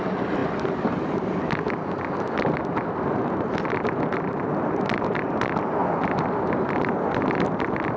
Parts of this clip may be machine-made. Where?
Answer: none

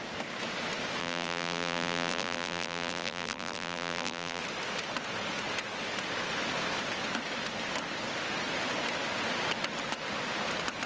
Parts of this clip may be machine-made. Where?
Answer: 1.0-4.4 (vocoder, BigVGAN v2)

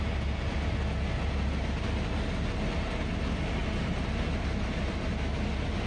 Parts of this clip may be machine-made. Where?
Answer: 2.4-3.0 (vocoder, BigVGAN v2); 3.6-5.0

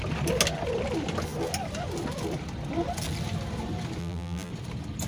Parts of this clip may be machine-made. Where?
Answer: 4.0-4.5 (vocoder, BigVGAN v2)

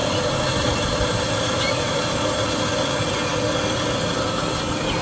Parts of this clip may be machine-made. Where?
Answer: 0.0-2.6 (vocoder, BigVGAN v2)

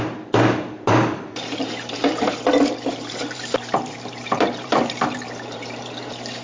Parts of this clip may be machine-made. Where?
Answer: 0.0-2.0 (vocoder, BigVGAN v2); 2.9-6.4

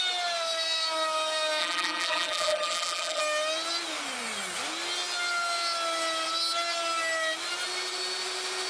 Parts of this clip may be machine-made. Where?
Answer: 1.6-3.2 (vocoder, BigVGAN v2)

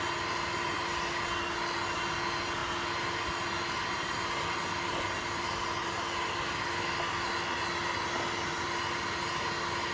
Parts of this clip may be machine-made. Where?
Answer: none